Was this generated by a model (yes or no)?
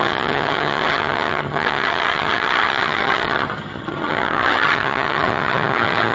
yes